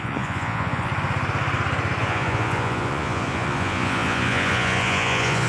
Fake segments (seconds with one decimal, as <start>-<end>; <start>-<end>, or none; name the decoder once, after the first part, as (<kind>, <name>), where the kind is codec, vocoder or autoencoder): 0.0-0.9 (vocoder, Vocos); 2.0-5.5